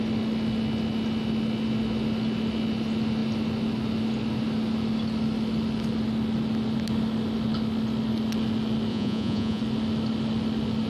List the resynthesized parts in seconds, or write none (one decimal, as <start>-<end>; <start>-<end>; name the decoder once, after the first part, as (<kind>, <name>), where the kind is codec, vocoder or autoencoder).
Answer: 8.9-9.6 (vocoder, Vocos)

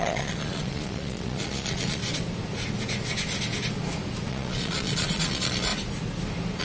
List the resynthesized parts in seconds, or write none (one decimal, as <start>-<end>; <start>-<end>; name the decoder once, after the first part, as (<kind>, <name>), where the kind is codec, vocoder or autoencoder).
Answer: 0.0-2.0 (vocoder, Vocos); 4.3-5.7